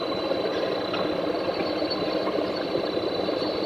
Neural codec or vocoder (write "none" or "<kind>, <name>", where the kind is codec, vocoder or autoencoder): none